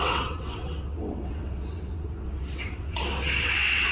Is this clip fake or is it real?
fake